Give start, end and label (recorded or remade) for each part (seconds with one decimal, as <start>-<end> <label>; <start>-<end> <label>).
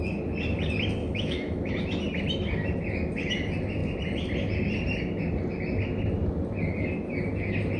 0.0-1.0 recorded; 1.0-1.7 remade; 1.7-7.8 recorded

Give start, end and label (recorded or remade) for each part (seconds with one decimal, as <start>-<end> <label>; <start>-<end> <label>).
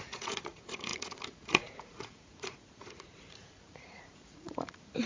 0.0-5.1 remade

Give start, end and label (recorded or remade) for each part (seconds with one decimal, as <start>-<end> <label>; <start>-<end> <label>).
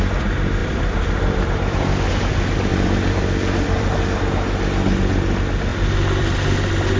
0.0-0.6 recorded; 0.6-2.1 remade; 2.1-2.7 recorded; 2.7-4.2 remade; 4.2-5.7 recorded; 5.7-6.2 remade; 6.2-7.0 recorded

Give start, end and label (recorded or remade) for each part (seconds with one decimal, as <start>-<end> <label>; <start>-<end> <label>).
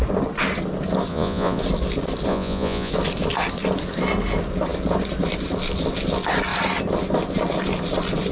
0.0-1.1 recorded; 1.1-1.6 remade; 1.6-2.3 recorded; 2.3-2.9 remade; 2.9-8.3 recorded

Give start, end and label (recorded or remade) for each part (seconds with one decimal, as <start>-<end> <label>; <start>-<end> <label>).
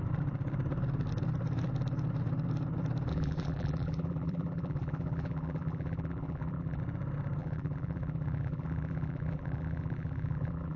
0.0-3.1 recorded; 3.1-6.8 remade; 6.8-7.4 recorded; 7.4-10.8 remade